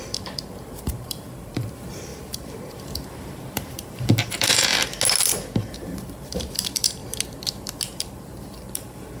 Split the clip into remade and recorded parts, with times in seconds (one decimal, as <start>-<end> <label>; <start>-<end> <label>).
0.0-4.7 remade; 4.7-5.7 recorded; 5.7-7.0 remade; 7.0-8.0 recorded; 8.0-9.2 remade